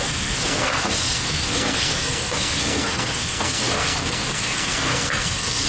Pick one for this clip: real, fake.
fake